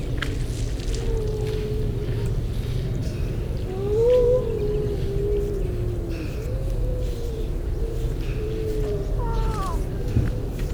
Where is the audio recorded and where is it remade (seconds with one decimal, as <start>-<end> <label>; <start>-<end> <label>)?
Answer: 0.0-3.0 recorded; 3.0-3.6 remade; 3.6-6.9 recorded; 6.9-8.4 remade; 8.4-10.7 recorded